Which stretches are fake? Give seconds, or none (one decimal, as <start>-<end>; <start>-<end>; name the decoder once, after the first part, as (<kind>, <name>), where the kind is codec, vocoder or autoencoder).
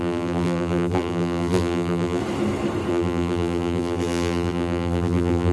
0.0-2.2 (vocoder, BigVGAN v2); 2.9-5.5